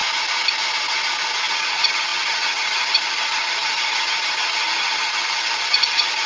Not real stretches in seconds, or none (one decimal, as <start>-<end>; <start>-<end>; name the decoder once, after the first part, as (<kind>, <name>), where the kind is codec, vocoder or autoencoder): 1.5-6.3 (vocoder, HiFi-GAN)